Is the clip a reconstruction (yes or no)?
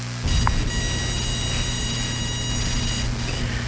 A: no